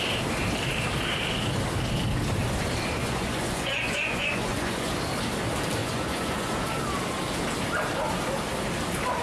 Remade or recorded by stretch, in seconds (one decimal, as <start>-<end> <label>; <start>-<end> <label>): 0.0-3.0 recorded; 3.0-4.9 remade; 4.9-5.8 recorded; 5.8-6.5 remade; 6.5-9.2 recorded